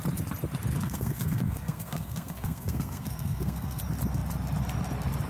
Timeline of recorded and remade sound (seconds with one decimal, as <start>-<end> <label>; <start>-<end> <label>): 0.0-0.7 recorded; 0.7-3.8 remade; 3.8-5.3 recorded